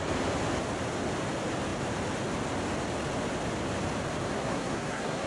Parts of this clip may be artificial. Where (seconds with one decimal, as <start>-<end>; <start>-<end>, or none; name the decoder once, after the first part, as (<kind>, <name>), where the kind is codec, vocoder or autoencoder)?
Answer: 4.2-5.3 (codec, SNAC)